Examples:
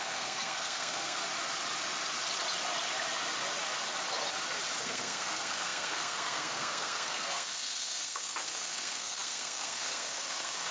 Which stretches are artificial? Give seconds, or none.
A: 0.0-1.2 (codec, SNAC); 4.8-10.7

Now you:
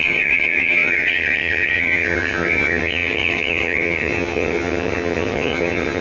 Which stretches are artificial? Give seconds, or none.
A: 0.0-6.0 (vocoder, HiFi-GAN)